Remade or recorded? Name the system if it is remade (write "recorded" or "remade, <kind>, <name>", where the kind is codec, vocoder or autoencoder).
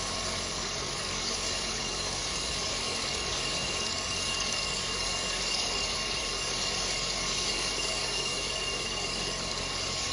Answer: remade, codec, DAC